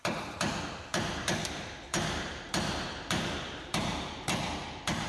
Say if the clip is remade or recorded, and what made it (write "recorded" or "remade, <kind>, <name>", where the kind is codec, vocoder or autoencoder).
remade, vocoder, BigVGAN v2